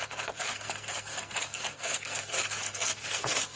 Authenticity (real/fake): fake